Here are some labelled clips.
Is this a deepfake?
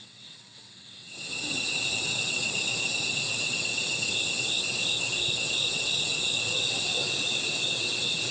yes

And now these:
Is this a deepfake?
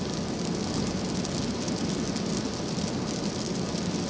no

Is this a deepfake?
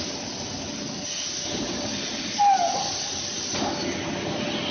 no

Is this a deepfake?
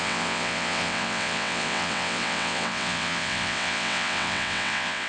yes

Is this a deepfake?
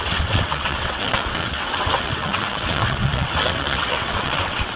yes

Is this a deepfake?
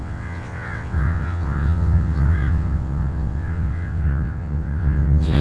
yes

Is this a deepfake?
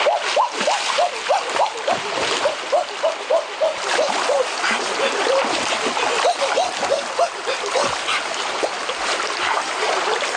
no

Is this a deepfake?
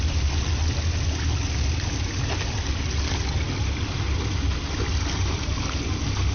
no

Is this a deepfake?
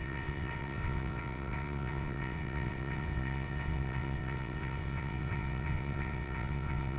yes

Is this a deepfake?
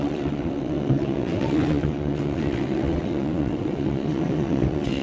yes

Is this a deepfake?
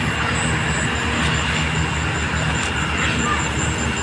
no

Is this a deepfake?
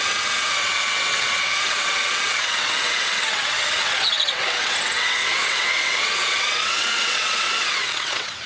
yes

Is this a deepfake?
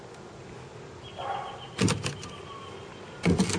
no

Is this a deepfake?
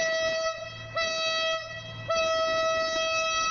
no